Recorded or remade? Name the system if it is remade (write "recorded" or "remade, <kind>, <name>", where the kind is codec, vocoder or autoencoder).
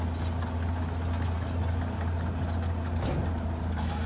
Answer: recorded